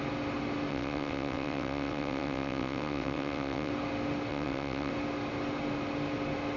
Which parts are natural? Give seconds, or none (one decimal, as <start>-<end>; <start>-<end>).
0.0-0.7; 3.7-4.3; 4.9-6.6